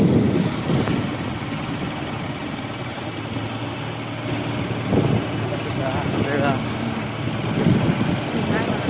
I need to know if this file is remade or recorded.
recorded